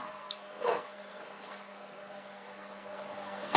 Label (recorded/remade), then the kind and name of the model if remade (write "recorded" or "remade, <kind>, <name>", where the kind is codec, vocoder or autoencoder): remade, codec, SNAC